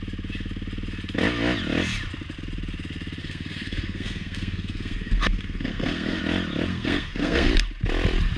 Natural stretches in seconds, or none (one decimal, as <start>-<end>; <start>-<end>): 0.0-3.2; 6.2-6.7; 7.5-8.4

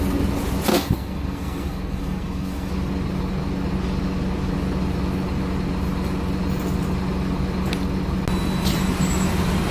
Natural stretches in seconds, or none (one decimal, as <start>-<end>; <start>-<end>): 0.0-0.7; 2.7-9.7

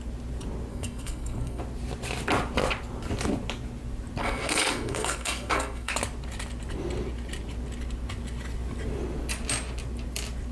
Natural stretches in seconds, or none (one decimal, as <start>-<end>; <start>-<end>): 0.0-0.7; 1.6-4.2; 5.9-10.5